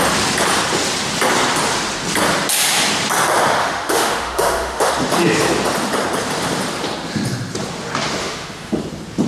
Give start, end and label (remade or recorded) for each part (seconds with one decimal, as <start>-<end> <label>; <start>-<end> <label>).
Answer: 0.0-3.6 recorded; 3.6-4.9 remade; 4.9-8.2 recorded; 8.2-8.8 remade; 8.8-9.3 recorded